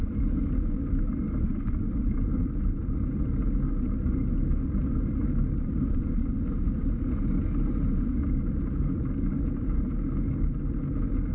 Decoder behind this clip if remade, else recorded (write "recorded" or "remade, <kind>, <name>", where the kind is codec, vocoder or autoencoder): recorded